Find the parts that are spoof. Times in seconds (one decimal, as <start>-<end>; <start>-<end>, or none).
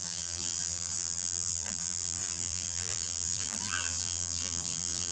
0.0-5.1